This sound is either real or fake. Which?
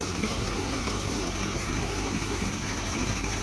fake